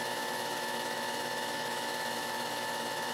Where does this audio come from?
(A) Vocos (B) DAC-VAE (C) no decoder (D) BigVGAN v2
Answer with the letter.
B